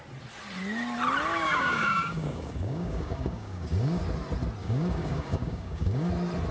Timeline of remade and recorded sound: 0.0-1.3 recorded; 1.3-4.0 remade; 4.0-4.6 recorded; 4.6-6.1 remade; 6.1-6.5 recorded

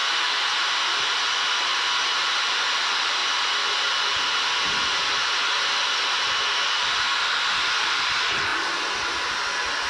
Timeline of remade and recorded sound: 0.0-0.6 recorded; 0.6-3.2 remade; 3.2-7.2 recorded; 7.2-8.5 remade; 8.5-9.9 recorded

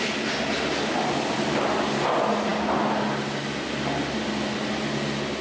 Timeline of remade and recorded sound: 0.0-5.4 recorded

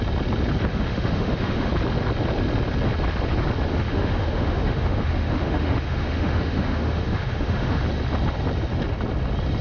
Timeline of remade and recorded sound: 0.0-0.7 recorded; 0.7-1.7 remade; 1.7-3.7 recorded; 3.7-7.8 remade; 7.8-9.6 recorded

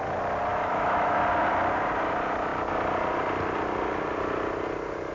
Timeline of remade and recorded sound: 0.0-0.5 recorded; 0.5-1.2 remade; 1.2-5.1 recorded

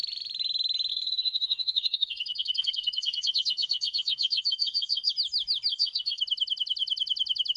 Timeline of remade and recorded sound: 0.0-0.9 recorded; 0.9-5.1 remade; 5.1-5.7 recorded; 5.7-6.2 remade; 6.2-7.6 recorded